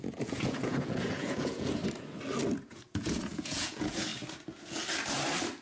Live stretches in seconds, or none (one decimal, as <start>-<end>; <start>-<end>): 1.8-2.6; 4.1-5.6